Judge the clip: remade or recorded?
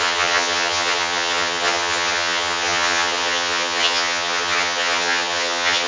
remade